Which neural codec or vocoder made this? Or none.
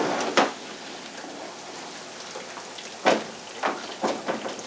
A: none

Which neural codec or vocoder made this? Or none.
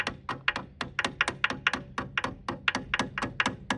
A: none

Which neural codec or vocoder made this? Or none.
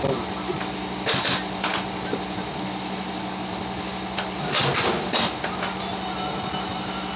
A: none